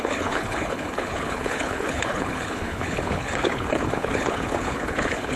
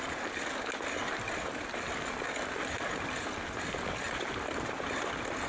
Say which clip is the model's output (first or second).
first